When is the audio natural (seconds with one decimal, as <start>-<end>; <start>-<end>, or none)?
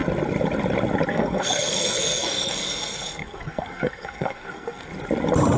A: 0.0-1.1; 4.9-5.6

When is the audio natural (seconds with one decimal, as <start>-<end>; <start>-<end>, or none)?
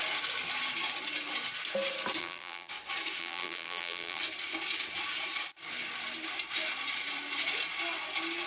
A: 0.0-2.2; 2.7-3.2; 4.2-8.5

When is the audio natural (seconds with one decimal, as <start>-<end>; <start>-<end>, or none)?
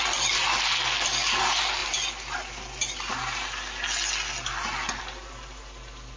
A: 0.0-6.2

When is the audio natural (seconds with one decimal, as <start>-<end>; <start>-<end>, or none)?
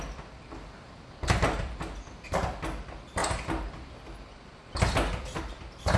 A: 0.0-6.0